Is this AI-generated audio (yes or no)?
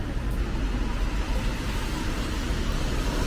no